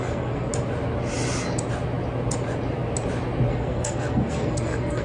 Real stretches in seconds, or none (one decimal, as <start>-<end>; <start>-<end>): 0.5-3.5